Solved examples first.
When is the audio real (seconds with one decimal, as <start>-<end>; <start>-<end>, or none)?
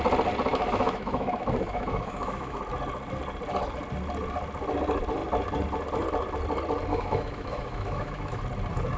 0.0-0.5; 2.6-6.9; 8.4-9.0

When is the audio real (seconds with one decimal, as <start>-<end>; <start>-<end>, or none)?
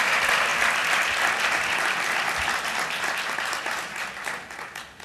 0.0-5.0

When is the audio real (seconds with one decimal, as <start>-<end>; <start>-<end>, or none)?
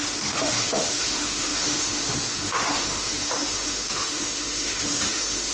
none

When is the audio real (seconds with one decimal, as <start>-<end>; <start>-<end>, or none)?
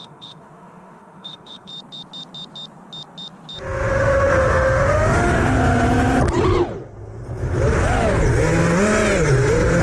1.7-3.9; 5.6-9.8